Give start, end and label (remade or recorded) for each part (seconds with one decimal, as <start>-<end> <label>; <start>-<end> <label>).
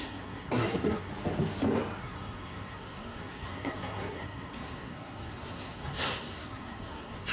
0.0-1.1 remade; 1.1-2.0 recorded; 2.0-7.3 remade